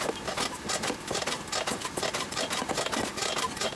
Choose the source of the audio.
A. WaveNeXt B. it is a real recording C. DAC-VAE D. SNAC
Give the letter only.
B